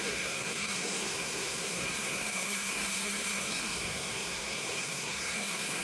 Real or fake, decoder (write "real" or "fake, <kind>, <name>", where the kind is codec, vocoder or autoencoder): fake, codec, SNAC